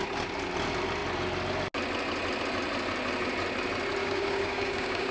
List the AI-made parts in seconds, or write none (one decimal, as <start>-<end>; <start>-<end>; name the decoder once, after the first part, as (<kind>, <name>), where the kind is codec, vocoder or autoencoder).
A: 4.0-5.1 (codec, DAC)